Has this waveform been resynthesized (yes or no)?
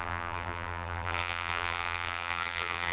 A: yes